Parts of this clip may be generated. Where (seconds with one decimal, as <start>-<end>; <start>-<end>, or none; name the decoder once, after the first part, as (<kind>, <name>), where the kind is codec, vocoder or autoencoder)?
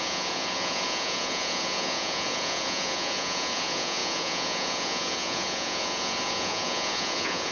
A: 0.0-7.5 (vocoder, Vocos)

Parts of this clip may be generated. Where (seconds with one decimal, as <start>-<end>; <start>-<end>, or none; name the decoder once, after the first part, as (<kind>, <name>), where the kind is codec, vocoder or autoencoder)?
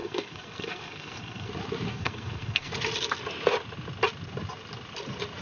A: 0.0-1.5 (codec, SNAC); 1.9-2.7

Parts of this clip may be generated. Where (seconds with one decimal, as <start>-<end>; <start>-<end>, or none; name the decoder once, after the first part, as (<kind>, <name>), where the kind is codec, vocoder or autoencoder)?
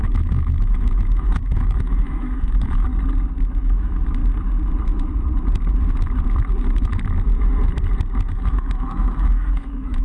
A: 0.0-2.9 (autoencoder, DAC-VAE); 3.6-4.2; 8.3-10.0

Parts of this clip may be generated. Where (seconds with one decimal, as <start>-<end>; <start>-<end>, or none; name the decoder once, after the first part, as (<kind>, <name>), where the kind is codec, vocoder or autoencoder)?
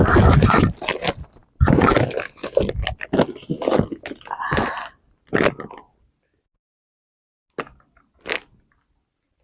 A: none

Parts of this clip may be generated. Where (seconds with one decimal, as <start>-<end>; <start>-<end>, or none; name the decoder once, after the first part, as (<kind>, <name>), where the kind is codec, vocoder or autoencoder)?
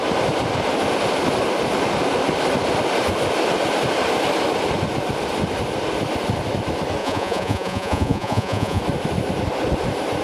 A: 7.0-8.8 (vocoder, Vocos)